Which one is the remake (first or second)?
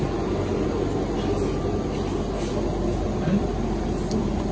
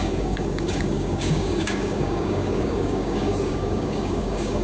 second